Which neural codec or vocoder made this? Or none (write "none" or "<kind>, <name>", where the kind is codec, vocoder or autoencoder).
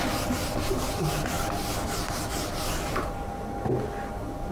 none